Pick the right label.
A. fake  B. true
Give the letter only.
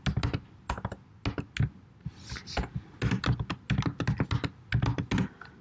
B